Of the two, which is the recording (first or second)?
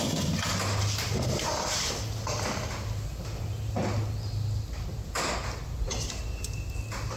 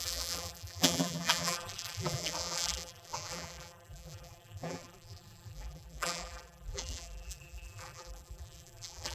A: first